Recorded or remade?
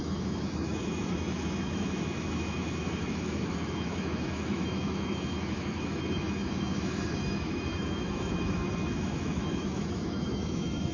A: remade